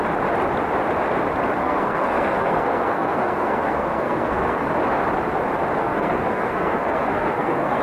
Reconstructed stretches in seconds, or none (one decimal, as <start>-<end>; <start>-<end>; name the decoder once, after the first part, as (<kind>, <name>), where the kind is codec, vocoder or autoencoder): 1.6-4.7 (codec, SNAC); 5.8-7.8